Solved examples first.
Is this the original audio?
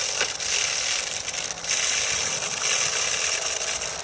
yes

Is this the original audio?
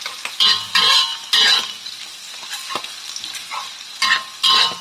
yes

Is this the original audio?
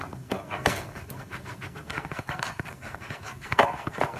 no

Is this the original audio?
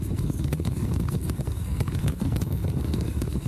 no